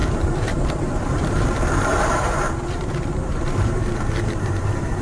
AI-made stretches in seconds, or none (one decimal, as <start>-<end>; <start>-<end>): 0.0-5.0